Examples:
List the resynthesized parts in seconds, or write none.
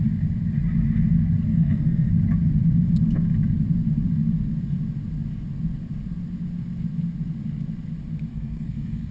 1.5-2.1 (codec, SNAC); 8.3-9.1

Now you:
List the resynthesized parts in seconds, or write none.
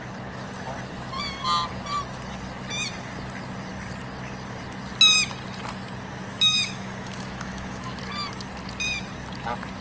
6.3-8.0 (autoencoder, DAC-VAE)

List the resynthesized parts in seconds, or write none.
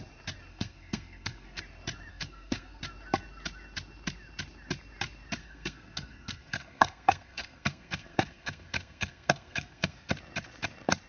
0.5-1.6 (codec, SNAC); 2.1-2.8; 5.4-10.1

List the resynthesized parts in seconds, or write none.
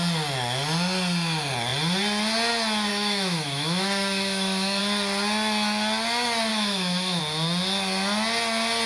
2.9-4.8 (autoencoder, DAC-VAE); 6.5-7.2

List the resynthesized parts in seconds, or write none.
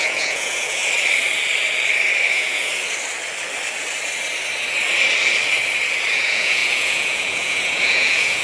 0.0-0.8 (vocoder, Vocos); 2.3-2.7; 6.1-8.4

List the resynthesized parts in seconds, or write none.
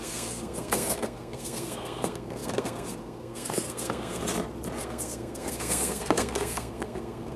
0.0-4.2 (codec, SNAC); 4.8-7.4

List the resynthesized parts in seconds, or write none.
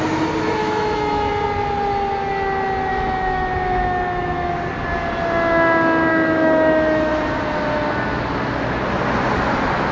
0.6-1.3 (autoencoder, DAC-VAE); 2.9-4.5; 6.1-7.1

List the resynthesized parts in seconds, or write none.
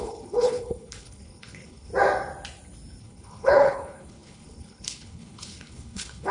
0.0-1.9 (codec, HILCodec); 3.0-6.3